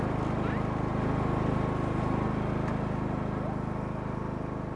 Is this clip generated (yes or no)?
no